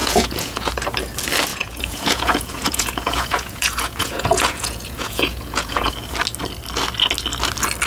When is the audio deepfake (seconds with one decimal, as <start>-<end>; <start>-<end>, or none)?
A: 0.0-0.7; 1.5-5.9